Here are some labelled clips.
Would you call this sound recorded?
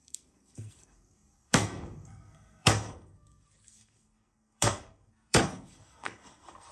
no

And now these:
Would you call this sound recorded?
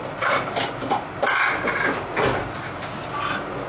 yes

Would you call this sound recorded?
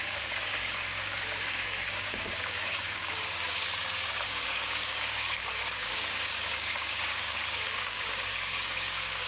no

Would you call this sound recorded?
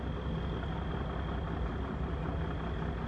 yes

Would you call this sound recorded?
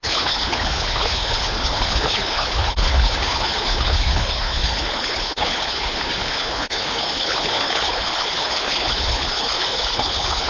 no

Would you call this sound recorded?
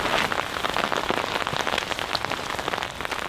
yes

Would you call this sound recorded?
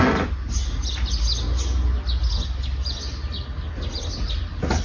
yes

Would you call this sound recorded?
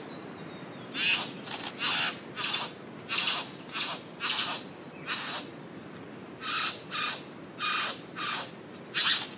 yes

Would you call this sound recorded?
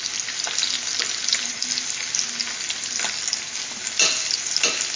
yes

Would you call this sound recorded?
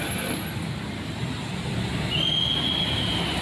yes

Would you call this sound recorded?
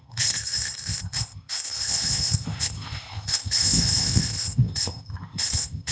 no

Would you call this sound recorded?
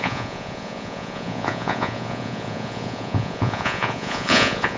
no